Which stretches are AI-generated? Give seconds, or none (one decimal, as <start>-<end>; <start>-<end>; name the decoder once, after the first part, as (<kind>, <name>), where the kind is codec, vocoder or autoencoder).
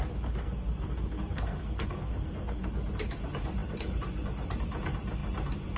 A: 0.4-2.7 (codec, SNAC)